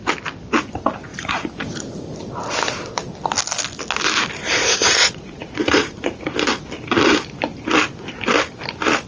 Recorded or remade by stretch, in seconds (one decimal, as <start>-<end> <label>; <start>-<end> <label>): 0.0-1.1 recorded; 1.1-1.7 remade; 1.7-4.6 recorded; 4.6-6.2 remade; 6.2-9.1 recorded